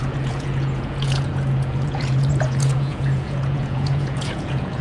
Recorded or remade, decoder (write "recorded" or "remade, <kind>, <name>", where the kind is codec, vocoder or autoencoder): remade, vocoder, Vocos